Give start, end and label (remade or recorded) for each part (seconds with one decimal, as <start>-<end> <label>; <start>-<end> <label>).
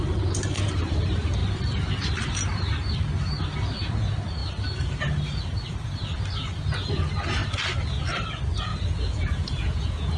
0.0-8.7 recorded; 8.7-10.2 remade